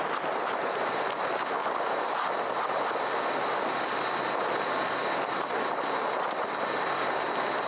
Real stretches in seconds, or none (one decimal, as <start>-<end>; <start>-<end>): 0.0-7.7